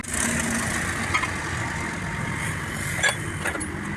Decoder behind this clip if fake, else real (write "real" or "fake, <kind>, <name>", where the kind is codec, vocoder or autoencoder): real